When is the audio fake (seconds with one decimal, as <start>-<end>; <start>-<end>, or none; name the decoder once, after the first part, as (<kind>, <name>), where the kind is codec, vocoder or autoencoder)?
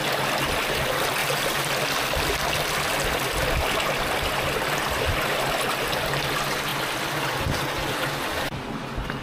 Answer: 1.2-1.7 (vocoder, BigVGAN v2)